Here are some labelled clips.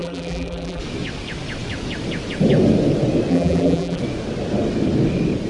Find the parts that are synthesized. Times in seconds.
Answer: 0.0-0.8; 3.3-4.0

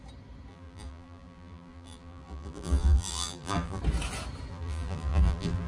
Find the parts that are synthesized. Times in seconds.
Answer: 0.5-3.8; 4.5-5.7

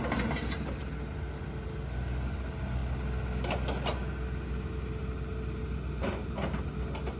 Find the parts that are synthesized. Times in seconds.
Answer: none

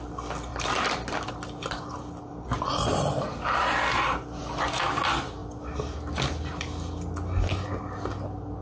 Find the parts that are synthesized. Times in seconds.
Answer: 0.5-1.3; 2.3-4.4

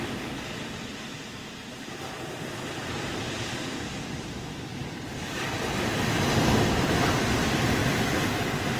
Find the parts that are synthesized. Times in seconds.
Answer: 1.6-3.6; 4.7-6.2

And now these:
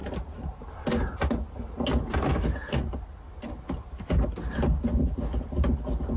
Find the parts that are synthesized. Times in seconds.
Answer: 0.0-0.6

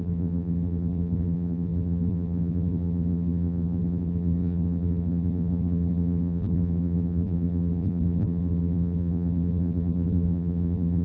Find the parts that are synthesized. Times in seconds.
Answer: 0.0-11.0

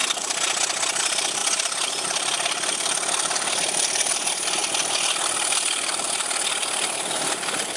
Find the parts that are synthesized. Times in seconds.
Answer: 1.0-1.4; 1.9-7.8